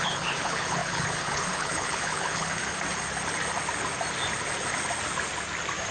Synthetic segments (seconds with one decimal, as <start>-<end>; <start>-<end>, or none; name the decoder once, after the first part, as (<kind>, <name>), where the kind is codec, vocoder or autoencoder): 0.0-2.6 (codec, HILCodec)